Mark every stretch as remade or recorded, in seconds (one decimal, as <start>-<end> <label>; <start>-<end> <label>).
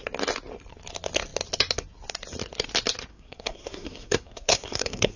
0.0-3.1 recorded; 3.1-5.2 remade